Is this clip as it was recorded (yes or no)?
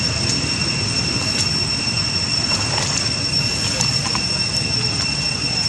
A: yes